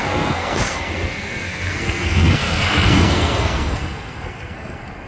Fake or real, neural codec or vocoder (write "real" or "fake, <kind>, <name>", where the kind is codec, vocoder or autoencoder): fake, codec, SNAC